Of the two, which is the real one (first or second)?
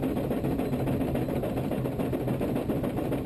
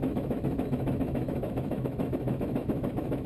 first